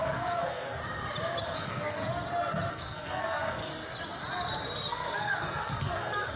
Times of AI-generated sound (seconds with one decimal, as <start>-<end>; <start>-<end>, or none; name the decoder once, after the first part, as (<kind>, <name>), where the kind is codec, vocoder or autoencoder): 0.0-0.8 (codec, SNAC); 1.4-2.0; 2.7-3.7; 4.9-6.4